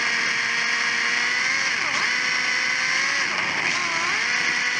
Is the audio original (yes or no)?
yes